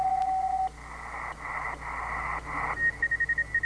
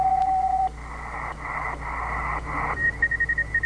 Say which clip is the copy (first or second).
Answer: second